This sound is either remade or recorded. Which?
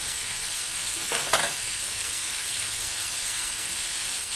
remade